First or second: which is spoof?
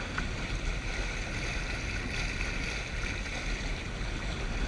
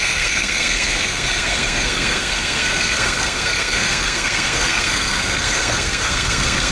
second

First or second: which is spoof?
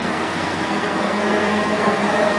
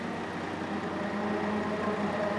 first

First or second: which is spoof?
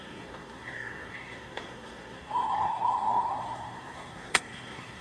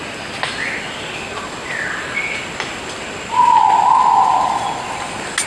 first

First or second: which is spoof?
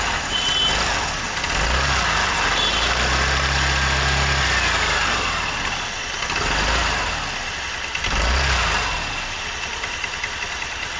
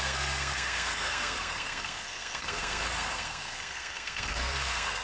second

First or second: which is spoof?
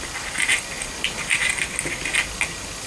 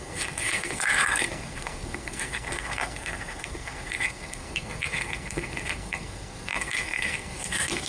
second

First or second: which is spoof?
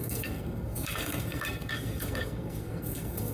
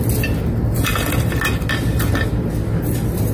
first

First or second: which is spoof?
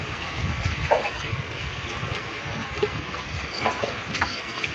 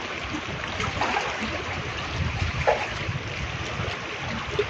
first